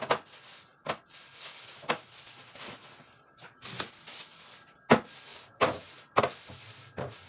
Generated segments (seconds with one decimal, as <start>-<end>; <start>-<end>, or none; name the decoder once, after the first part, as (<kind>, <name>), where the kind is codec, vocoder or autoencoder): 5.3-6.2 (vocoder, BigVGAN v2)